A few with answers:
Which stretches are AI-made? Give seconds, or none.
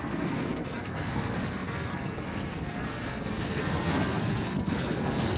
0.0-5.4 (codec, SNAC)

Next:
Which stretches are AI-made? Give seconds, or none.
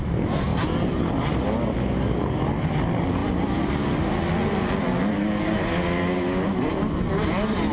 none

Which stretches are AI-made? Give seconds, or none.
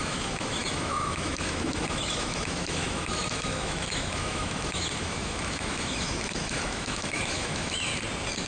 0.0-7.9 (autoencoder, DAC-VAE)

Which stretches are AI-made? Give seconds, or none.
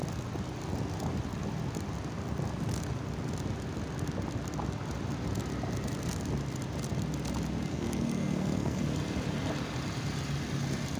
7.7-8.8 (codec, SNAC)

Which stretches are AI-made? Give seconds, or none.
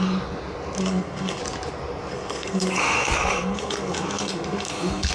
0.8-1.4 (codec, SNAC); 2.1-5.1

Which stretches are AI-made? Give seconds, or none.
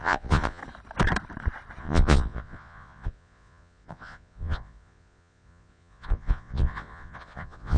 0.0-0.6 (vocoder, Vocos); 1.8-7.8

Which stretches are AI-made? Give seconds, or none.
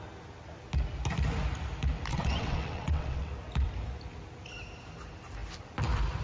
2.1-3.3 (vocoder, WaveNeXt)